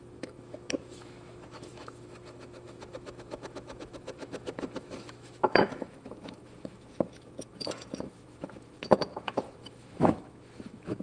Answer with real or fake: fake